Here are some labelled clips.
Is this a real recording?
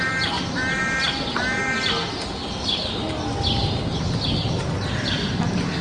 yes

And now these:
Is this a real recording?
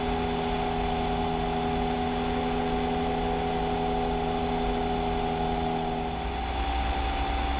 yes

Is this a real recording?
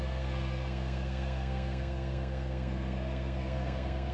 no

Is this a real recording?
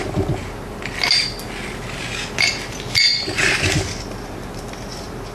yes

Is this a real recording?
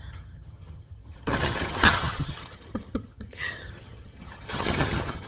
no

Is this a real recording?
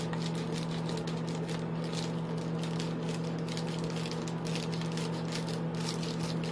yes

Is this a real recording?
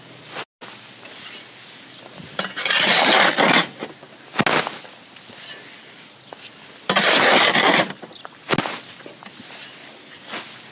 yes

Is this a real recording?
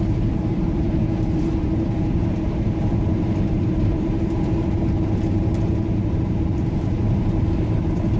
no